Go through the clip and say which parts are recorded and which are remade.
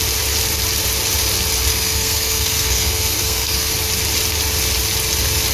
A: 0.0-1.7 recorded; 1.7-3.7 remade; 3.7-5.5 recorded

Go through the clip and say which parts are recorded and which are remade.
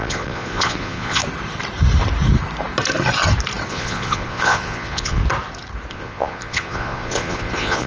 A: 0.0-1.2 remade; 1.2-3.7 recorded; 3.7-5.2 remade; 5.2-5.9 recorded; 5.9-7.9 remade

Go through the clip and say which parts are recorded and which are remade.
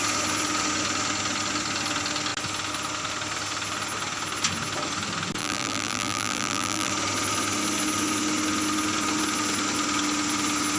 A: 0.0-5.4 recorded; 5.4-6.9 remade; 6.9-10.8 recorded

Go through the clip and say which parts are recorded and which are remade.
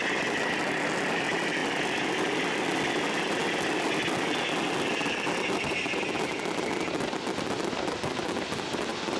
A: 0.0-9.2 recorded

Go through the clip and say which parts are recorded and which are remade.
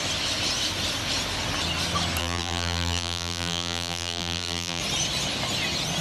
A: 0.0-2.2 recorded; 2.2-4.8 remade; 4.8-6.0 recorded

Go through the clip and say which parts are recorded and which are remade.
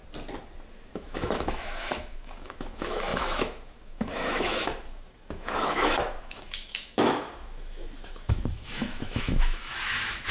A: 0.0-0.7 recorded; 0.7-10.3 remade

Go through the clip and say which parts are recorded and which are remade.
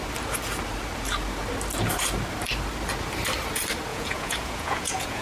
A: 0.0-3.9 recorded; 3.9-5.2 remade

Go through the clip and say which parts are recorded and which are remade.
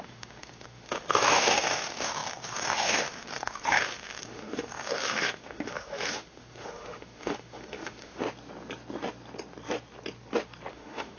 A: 0.0-8.2 remade; 8.2-10.7 recorded; 10.7-11.2 remade